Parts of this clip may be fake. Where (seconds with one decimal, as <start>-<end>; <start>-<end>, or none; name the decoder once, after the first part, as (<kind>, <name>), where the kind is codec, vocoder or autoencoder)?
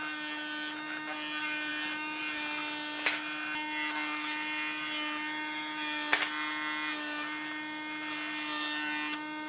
none